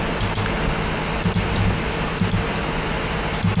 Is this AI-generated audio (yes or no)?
no